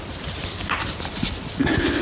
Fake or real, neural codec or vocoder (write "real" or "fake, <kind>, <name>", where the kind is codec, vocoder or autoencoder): real